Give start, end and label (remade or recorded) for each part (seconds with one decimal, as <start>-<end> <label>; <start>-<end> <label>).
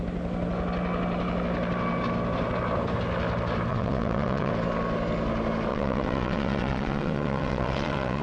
0.0-3.7 recorded; 3.7-4.5 remade; 4.5-5.7 recorded; 5.7-8.2 remade